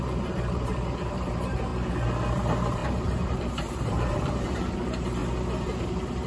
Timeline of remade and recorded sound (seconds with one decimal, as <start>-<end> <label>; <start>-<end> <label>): 0.0-1.7 remade; 1.7-2.3 recorded; 2.3-5.2 remade; 5.2-5.8 recorded; 5.8-6.3 remade